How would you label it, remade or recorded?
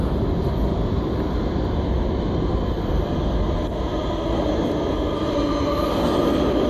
recorded